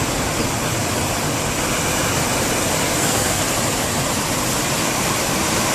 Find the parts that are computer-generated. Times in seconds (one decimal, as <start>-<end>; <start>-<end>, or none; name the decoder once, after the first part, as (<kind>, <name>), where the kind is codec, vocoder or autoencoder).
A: 2.8-3.4 (codec, SNAC)